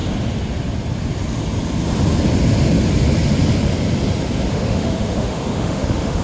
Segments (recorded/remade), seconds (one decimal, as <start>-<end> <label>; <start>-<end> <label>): 0.0-4.5 recorded; 4.5-6.2 remade